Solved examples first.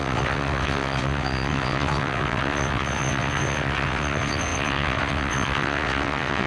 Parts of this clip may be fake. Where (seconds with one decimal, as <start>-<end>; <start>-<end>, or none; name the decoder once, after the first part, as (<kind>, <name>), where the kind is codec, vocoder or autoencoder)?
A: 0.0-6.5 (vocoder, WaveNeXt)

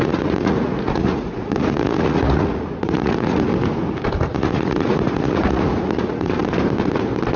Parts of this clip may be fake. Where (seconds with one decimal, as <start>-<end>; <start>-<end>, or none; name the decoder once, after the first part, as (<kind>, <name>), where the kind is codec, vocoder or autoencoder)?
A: 0.0-3.5 (vocoder, Vocos); 4.3-6.4

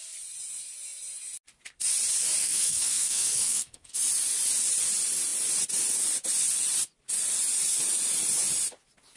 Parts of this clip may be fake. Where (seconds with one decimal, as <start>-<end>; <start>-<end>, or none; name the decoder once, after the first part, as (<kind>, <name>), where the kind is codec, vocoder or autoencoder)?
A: 2.4-4.0 (codec, SNAC)